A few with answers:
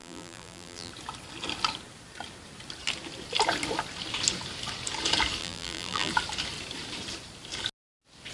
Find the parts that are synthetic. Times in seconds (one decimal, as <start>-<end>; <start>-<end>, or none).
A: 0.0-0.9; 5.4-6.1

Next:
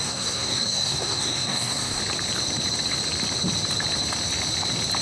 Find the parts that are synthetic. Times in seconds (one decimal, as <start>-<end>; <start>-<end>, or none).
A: 0.0-2.0

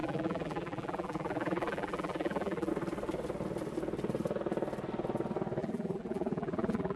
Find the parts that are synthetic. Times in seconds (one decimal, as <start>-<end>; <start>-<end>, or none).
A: 0.0-2.7; 5.6-7.0

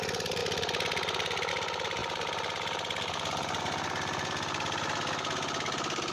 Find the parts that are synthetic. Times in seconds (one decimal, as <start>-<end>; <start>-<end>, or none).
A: none

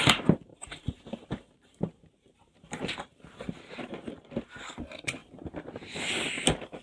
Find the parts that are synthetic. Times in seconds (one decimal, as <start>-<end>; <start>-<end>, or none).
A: 0.5-4.6